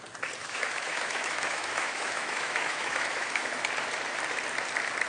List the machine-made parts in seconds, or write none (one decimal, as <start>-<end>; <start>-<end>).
0.4-3.5

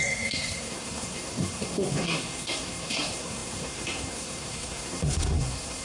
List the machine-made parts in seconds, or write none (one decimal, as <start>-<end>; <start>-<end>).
0.0-5.8

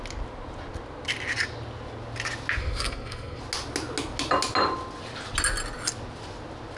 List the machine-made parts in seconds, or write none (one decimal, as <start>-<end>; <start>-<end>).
2.6-3.4